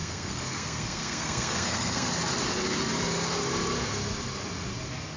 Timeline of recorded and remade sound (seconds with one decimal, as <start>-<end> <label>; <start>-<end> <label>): 0.0-2.1 remade; 2.1-5.2 recorded